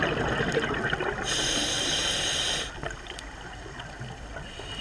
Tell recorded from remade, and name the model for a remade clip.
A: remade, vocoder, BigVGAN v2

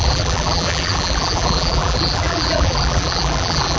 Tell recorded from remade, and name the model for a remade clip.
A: remade, vocoder, BigVGAN v2